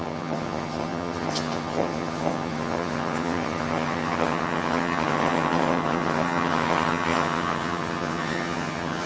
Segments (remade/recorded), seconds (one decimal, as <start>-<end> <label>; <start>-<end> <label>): 0.0-9.1 remade

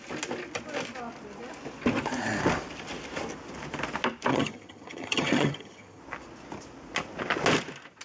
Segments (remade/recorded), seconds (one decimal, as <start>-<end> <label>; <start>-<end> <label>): 0.0-4.3 recorded; 4.3-6.0 remade; 6.0-8.0 recorded

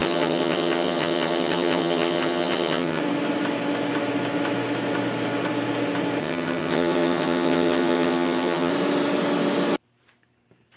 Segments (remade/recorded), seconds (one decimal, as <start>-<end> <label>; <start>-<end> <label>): 0.0-3.0 remade; 3.0-6.2 recorded; 6.2-8.7 remade; 8.7-10.8 recorded

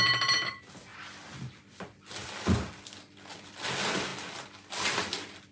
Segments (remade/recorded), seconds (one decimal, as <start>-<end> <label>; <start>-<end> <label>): 0.0-5.5 recorded

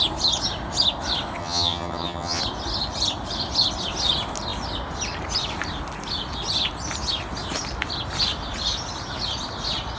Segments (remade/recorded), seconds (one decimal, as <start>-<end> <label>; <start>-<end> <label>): 0.0-1.4 recorded; 1.4-2.4 remade; 2.4-10.0 recorded

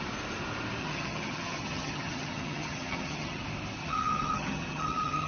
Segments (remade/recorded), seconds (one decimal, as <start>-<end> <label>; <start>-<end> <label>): 0.0-0.8 recorded; 0.8-3.4 remade; 3.4-3.8 recorded; 3.8-5.3 remade